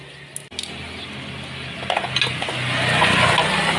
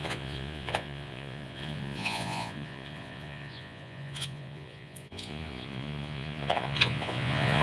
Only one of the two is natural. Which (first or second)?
first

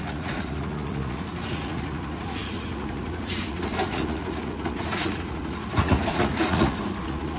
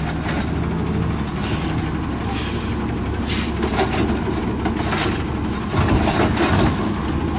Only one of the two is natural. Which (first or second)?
second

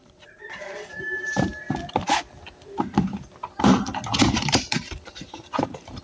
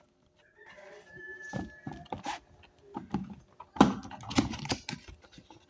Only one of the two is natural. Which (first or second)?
second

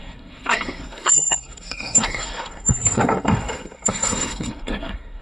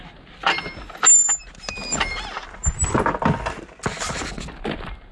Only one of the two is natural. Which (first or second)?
second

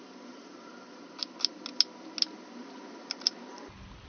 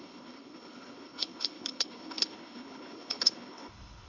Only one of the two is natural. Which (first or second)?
first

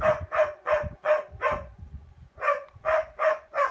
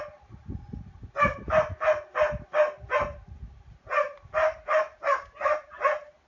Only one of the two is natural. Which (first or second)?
second